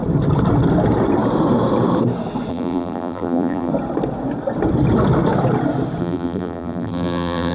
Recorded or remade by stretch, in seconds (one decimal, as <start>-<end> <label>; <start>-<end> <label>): 0.0-2.5 recorded; 2.5-3.7 remade; 3.7-6.0 recorded; 6.0-7.5 remade